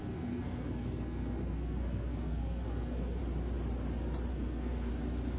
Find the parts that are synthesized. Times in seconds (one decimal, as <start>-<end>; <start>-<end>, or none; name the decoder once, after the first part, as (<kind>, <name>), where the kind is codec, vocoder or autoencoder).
0.0-3.2 (codec, SNAC); 4.3-4.9